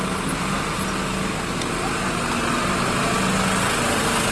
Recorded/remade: recorded